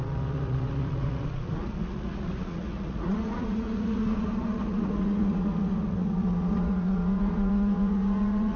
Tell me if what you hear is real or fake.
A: fake